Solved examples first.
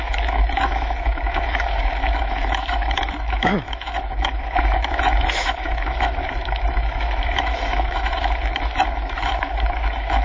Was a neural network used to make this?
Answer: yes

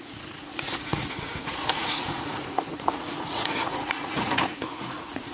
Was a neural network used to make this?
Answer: yes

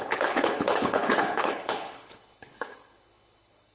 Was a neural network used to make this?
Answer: yes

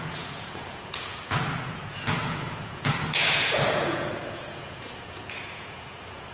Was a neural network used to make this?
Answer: yes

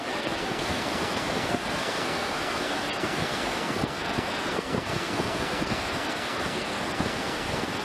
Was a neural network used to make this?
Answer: yes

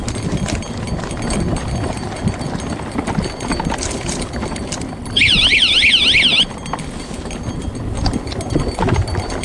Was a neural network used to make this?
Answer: no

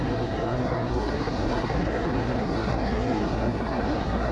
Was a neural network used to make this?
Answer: yes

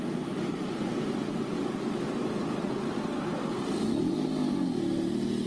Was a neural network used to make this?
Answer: no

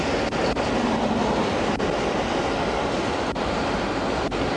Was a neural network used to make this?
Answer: no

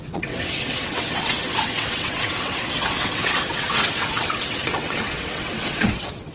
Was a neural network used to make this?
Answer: yes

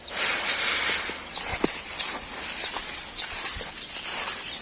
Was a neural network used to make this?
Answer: no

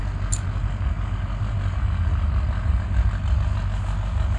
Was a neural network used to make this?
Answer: no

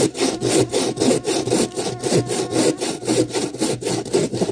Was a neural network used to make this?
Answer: no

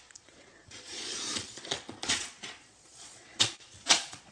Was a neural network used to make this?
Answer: yes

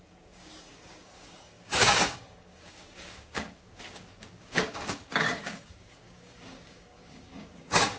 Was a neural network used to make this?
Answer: yes